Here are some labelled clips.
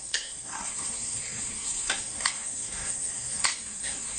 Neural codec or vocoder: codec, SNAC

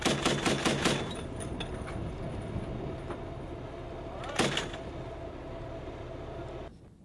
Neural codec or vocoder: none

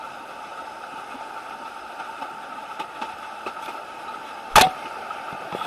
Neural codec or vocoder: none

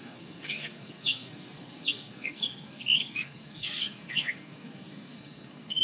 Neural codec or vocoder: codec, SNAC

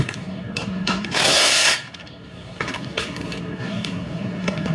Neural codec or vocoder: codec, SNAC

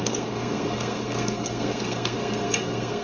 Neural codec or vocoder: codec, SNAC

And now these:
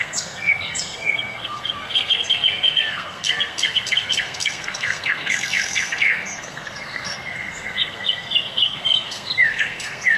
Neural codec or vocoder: codec, SNAC